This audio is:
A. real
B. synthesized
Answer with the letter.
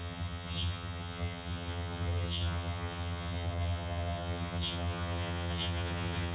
B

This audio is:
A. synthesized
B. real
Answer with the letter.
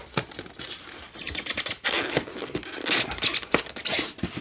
A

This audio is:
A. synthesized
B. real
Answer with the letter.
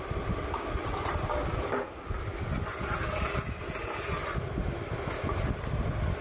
B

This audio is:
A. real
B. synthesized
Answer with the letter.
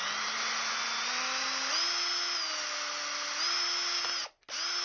A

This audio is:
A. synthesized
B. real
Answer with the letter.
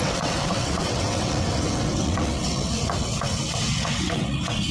A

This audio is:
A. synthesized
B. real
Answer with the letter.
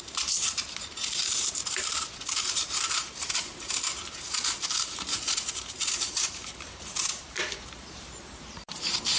A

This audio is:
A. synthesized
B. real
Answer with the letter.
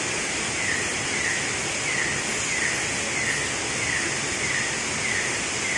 B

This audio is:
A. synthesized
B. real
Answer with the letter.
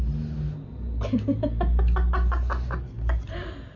B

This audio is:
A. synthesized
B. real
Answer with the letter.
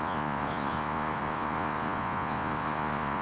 A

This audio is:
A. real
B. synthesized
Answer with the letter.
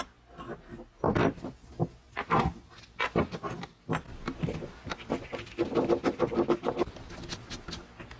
A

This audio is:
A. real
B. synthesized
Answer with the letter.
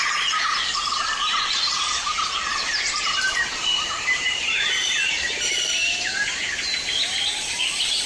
B